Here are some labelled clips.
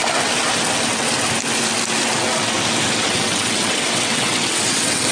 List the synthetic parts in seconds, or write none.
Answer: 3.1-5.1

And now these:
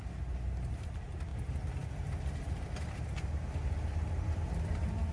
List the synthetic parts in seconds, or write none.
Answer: none

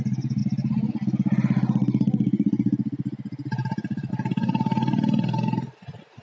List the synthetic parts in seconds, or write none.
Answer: none

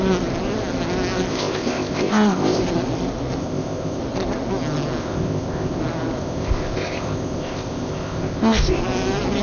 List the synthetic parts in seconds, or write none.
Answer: 1.3-2.6; 3.4-4.0; 5.0-5.8; 6.2-8.8

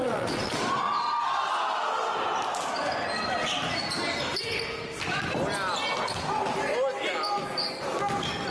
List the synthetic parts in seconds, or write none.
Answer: 0.0-1.0

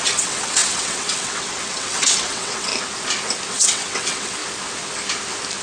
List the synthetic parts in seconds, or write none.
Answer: 0.0-2.7; 3.5-4.4

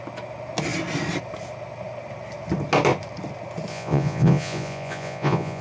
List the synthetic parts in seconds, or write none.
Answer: 3.7-5.6

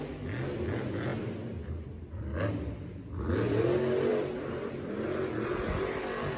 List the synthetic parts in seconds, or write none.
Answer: none